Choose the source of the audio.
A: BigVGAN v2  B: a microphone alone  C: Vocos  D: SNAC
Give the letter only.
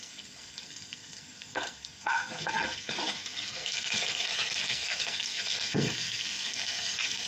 D